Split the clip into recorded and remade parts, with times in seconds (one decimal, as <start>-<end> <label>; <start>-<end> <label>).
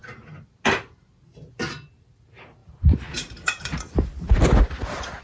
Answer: 0.0-2.6 recorded; 2.6-4.4 remade; 4.4-5.2 recorded